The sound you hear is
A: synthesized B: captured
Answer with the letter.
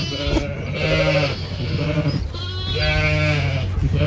B